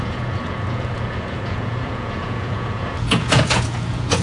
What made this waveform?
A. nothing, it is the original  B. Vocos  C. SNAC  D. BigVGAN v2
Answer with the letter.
B